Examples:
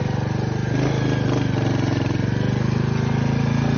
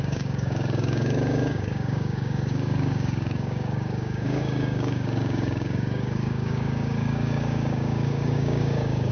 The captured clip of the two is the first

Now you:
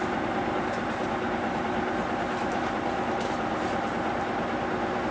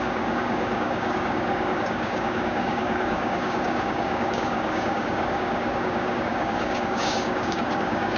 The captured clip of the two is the first